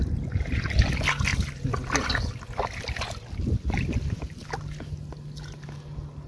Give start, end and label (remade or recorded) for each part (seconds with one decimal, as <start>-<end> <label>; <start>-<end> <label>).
0.0-6.3 recorded